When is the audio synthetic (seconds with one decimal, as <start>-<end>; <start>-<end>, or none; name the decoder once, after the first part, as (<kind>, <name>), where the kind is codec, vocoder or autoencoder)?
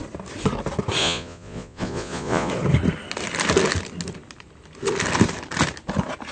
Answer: 1.0-2.5 (vocoder, Vocos)